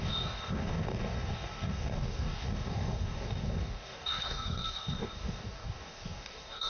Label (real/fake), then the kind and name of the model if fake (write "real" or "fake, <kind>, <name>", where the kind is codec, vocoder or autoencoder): fake, codec, DAC